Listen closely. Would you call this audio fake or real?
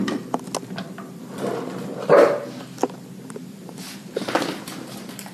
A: real